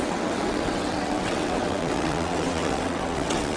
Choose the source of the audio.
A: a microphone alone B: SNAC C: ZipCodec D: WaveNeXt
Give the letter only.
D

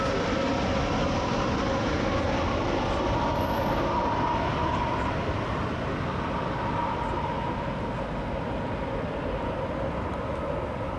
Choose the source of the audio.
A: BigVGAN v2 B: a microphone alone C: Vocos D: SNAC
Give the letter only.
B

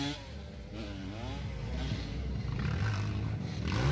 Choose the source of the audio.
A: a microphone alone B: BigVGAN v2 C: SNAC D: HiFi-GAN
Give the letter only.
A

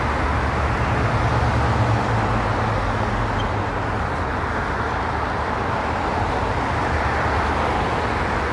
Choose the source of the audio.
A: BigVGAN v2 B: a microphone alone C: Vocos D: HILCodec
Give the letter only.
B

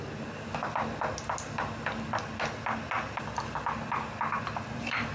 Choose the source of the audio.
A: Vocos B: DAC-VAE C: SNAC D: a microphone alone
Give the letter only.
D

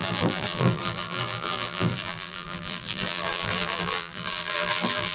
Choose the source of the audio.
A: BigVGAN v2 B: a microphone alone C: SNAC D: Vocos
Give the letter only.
A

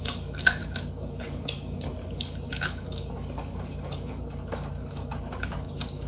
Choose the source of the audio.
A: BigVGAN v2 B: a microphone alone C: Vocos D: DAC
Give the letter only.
D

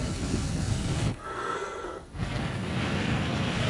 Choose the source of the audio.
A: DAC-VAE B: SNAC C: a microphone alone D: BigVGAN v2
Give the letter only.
B